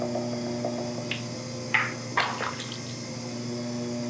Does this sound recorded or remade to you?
recorded